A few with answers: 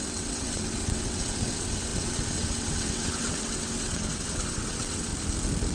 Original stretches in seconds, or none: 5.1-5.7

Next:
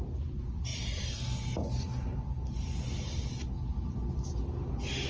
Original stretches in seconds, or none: 0.0-5.1

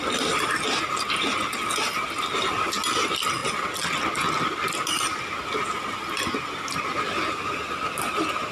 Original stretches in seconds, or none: 0.0-8.5

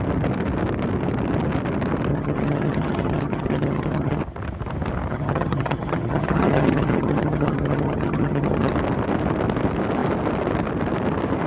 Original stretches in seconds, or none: 0.0-2.1; 4.2-5.1; 8.7-11.5

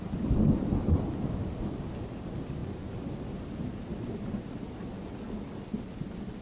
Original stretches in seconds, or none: 0.0-6.4

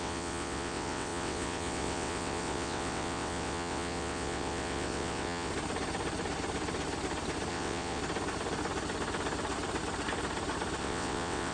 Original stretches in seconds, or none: 5.5-7.5; 8.0-10.8

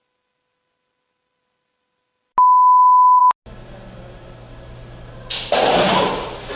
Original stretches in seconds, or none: 0.0-6.6

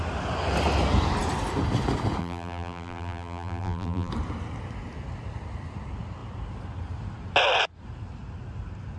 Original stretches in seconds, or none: 0.0-2.2; 4.1-9.0